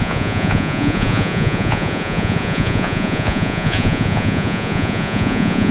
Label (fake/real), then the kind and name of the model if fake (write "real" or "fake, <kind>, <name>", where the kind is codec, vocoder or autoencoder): fake, vocoder, Vocos